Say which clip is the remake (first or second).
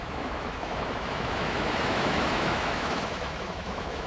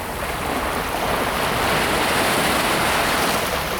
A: first